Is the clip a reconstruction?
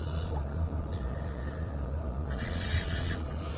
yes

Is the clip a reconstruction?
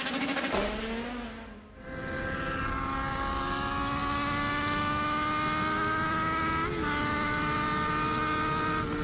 no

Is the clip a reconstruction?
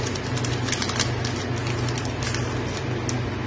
no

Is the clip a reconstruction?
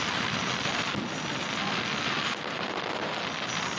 no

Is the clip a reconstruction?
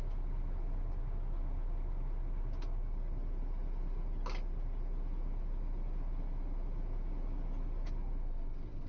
no